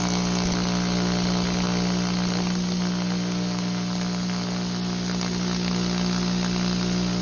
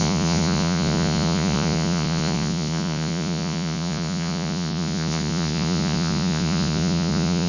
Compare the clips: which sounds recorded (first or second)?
first